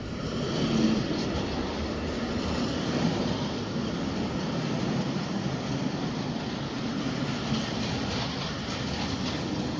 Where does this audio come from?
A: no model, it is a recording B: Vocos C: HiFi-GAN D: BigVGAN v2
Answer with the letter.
A